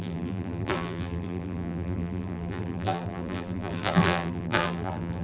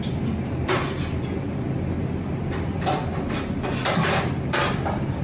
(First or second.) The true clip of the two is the second